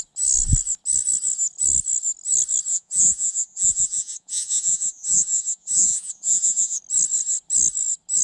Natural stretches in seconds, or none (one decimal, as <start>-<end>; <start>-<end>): 0.0-2.7; 6.8-8.2